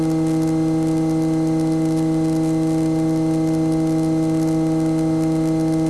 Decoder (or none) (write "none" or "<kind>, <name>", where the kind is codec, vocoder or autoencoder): none